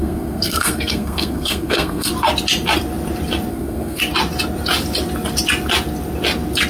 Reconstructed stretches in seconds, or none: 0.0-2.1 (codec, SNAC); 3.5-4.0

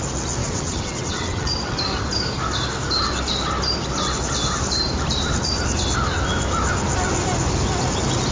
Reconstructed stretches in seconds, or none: 0.4-1.8 (vocoder, WaveNeXt)

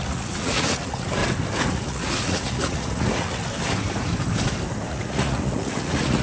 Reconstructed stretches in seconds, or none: 0.0-1.2 (vocoder, Vocos); 1.7-3.4; 4.9-6.2

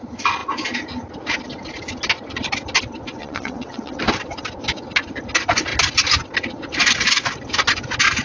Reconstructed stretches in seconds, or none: 3.2-4.0 (vocoder, WaveNeXt)

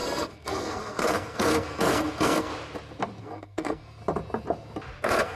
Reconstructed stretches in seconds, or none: 0.0-2.5 (codec, SNAC); 3.2-4.0; 5.0-5.4

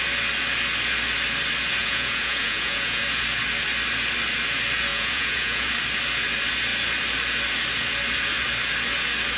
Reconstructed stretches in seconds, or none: 1.8-3.0 (vocoder, Vocos); 4.9-5.7

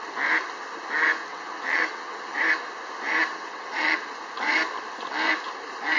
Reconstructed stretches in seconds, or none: 1.3-2.4 (vocoder, WaveNeXt); 3.3-4.1